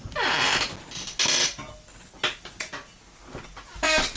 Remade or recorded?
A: recorded